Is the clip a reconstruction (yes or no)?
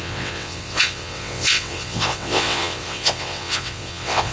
yes